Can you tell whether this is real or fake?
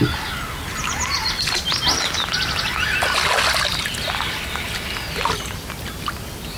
real